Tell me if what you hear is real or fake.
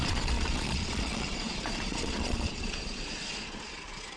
fake